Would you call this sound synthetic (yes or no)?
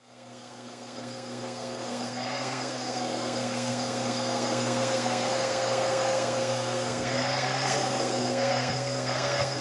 yes